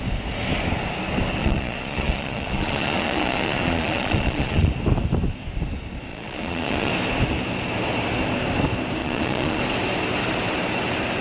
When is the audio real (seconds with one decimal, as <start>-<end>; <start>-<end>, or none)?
0.0-1.4; 4.7-6.1; 6.9-9.0; 9.6-11.2